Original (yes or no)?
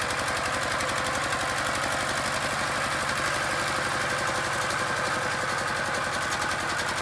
yes